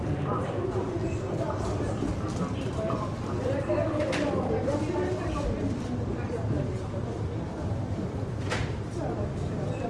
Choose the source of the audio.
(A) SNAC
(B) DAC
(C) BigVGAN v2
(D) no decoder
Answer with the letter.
C